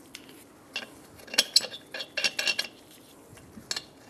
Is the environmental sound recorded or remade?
recorded